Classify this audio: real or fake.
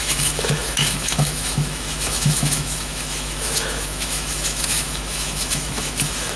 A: fake